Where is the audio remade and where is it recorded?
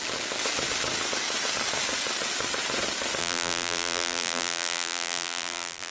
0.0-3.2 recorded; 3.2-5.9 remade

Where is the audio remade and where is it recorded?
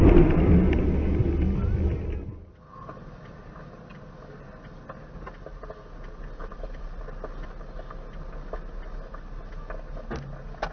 0.0-6.4 recorded; 6.4-7.0 remade; 7.0-10.7 recorded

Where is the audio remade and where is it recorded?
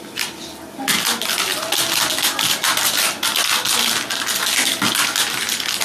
0.0-5.8 recorded